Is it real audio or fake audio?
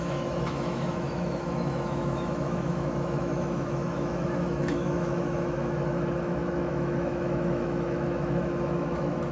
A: fake